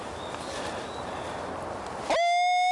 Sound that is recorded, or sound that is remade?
recorded